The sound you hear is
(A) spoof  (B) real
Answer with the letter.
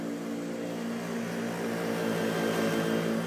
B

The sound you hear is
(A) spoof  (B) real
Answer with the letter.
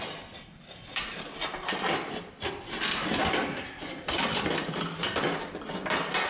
A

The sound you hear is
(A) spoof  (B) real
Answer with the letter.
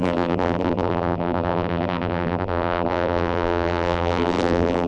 A